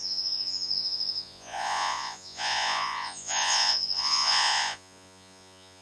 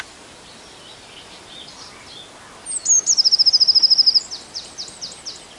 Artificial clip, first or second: first